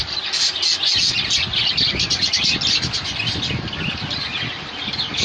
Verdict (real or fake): real